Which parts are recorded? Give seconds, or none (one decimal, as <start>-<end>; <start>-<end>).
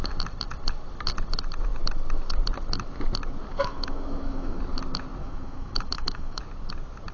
0.0-3.5; 4.6-5.2; 6.4-7.1